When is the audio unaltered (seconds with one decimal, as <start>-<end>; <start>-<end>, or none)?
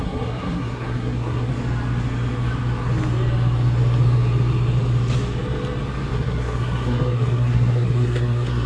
1.5-6.1